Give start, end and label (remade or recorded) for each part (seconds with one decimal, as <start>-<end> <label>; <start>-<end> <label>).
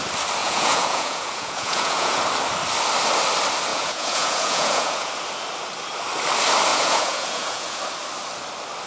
0.0-0.4 recorded; 0.4-2.2 remade; 2.2-3.7 recorded; 3.7-5.1 remade; 5.1-6.7 recorded; 6.7-7.8 remade; 7.8-8.9 recorded